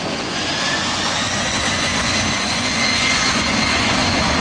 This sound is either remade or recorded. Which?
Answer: remade